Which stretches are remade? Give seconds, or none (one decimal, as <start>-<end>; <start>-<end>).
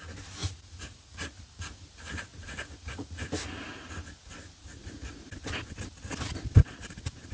0.4-1.5; 2.3-3.2; 4.6-5.3